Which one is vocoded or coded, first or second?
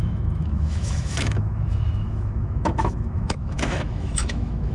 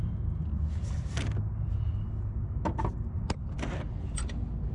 first